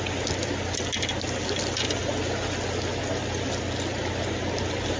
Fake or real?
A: real